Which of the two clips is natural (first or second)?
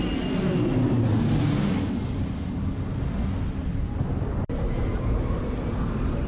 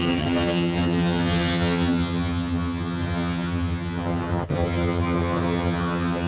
first